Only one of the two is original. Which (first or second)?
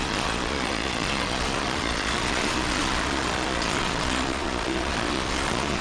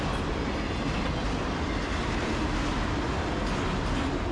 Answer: second